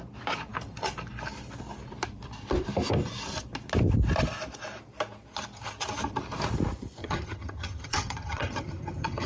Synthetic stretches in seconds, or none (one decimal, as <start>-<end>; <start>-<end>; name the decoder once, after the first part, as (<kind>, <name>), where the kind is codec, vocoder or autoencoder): 7.0-9.3 (vocoder, HiFi-GAN)